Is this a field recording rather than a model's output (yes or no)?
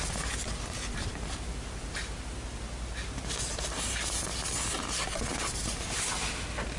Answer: yes